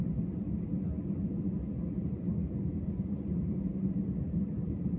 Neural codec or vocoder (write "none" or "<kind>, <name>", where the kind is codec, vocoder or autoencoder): none